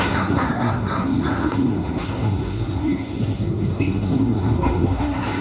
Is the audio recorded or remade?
remade